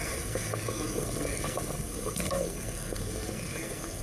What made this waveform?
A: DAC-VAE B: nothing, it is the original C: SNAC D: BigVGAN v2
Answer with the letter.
C